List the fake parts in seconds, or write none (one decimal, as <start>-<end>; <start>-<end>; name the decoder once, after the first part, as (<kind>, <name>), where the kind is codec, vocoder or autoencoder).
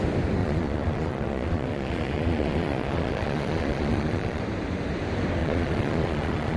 0.4-4.4 (vocoder, Vocos); 5.4-6.6